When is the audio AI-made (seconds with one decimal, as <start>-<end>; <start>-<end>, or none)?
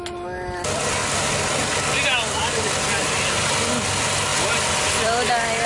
none